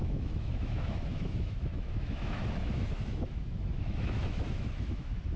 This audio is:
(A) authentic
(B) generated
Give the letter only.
B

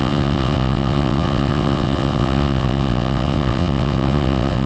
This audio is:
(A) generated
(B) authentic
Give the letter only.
A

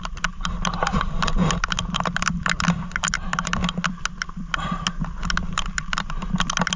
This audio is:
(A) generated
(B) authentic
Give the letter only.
B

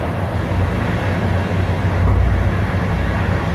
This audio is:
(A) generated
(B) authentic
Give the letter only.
B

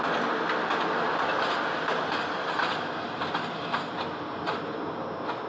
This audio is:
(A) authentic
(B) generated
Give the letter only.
A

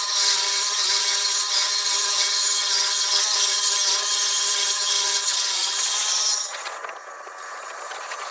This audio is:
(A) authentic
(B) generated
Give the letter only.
B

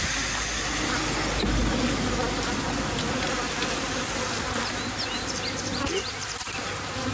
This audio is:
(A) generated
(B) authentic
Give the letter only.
B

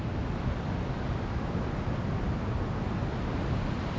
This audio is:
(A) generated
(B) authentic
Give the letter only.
B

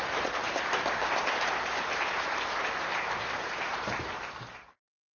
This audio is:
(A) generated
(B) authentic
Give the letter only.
A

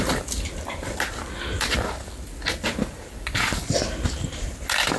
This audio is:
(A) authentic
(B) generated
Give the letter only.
A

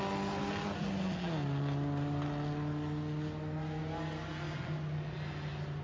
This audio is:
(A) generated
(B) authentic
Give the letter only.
B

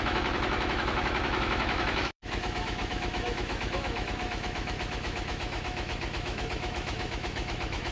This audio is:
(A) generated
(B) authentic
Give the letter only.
A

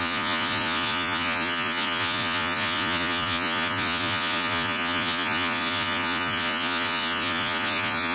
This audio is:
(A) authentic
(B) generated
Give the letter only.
B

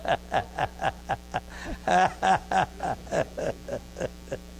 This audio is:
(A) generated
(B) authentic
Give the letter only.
B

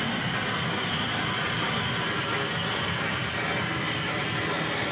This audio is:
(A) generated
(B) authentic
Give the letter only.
B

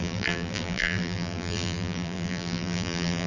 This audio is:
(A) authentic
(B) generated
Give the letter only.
B